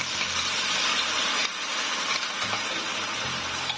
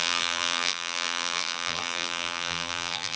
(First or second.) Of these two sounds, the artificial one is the second